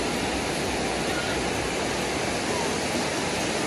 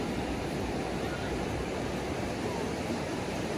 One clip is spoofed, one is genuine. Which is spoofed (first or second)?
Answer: second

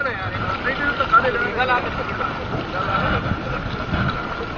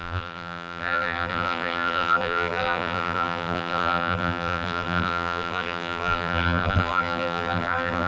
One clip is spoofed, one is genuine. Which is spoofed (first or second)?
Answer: second